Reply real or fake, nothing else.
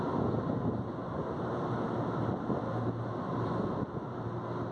real